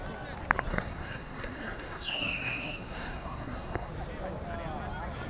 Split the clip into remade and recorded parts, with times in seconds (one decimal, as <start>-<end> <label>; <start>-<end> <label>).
0.0-0.7 recorded; 0.7-3.9 remade; 3.9-5.3 recorded